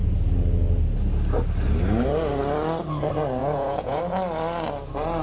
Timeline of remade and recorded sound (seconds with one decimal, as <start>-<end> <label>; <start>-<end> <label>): 0.0-3.4 recorded; 3.4-4.0 remade; 4.0-5.2 recorded